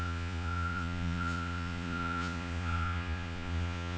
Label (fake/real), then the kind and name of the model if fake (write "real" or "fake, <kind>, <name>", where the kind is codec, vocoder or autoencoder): fake, vocoder, Vocos